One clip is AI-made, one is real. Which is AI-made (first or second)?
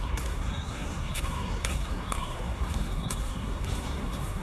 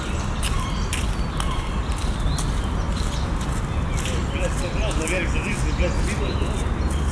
first